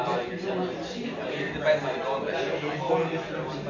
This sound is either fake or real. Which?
real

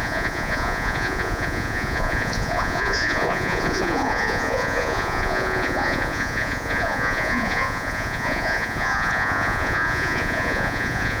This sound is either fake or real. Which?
fake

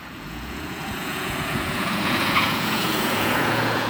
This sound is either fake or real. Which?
fake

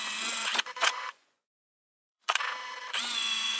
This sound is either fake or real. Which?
fake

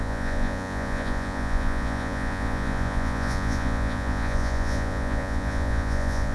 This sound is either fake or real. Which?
fake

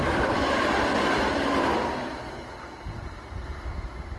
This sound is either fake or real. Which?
real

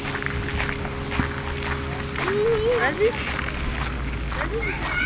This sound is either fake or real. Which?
real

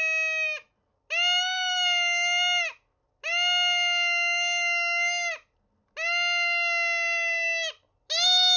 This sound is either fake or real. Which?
real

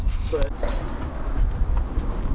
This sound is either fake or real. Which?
real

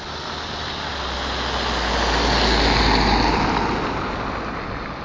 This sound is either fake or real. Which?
real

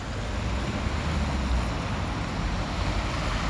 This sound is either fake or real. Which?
real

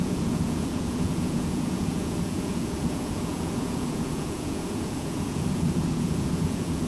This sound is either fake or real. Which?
fake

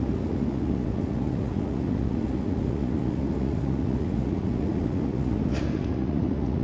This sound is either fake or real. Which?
fake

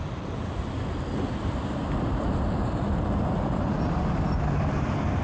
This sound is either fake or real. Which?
real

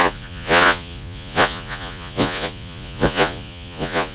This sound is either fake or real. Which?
fake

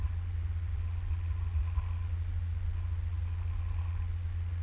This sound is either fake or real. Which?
fake